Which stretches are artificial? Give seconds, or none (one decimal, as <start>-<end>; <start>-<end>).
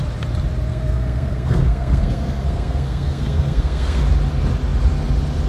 0.7-4.0